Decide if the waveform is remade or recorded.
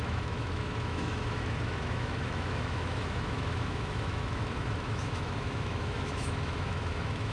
remade